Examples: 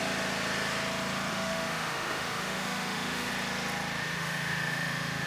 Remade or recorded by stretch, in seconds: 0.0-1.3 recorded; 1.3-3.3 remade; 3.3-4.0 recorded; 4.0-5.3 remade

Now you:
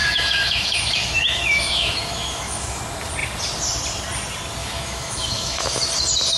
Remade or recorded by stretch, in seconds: 0.0-2.8 remade; 2.8-4.6 recorded; 4.6-5.8 remade; 5.8-6.4 recorded

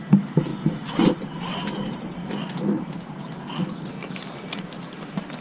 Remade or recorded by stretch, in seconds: 0.0-5.4 recorded

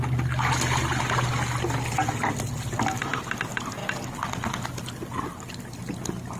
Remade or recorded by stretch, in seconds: 0.0-6.4 recorded